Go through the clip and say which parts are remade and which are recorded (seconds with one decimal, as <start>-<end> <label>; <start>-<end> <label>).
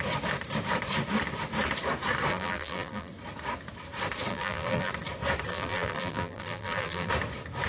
0.0-2.3 recorded; 2.3-3.1 remade; 3.1-4.3 recorded; 4.3-4.9 remade; 4.9-5.5 recorded; 5.5-7.1 remade; 7.1-7.7 recorded